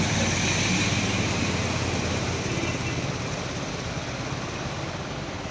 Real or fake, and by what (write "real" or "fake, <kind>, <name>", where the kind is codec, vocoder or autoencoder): real